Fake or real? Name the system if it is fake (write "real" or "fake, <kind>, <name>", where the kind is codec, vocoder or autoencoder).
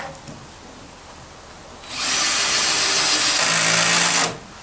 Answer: real